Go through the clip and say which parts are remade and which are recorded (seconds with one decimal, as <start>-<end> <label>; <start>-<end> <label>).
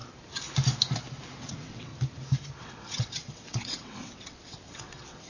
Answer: 0.0-1.4 recorded; 1.4-1.9 remade; 1.9-2.6 recorded; 2.6-5.3 remade